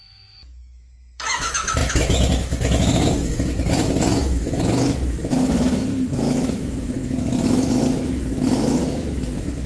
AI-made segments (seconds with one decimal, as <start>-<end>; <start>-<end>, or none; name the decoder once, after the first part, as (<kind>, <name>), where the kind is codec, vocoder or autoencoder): 0.0-9.7 (autoencoder, DAC-VAE)